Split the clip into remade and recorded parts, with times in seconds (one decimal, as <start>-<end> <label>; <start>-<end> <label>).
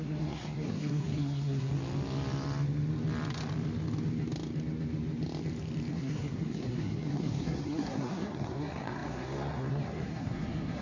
0.0-1.7 remade; 1.7-5.9 recorded; 5.9-10.8 remade